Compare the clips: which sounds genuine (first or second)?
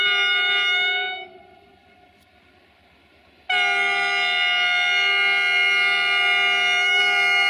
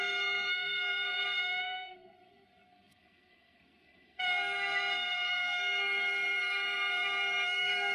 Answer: first